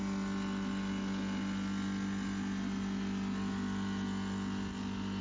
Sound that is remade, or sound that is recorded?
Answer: recorded